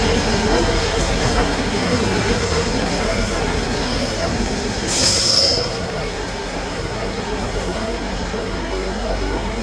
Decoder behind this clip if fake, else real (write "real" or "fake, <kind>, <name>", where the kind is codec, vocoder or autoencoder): fake, codec, SNAC